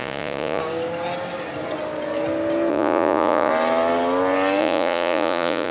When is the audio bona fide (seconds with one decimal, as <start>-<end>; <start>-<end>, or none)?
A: 0.6-2.7; 3.5-4.6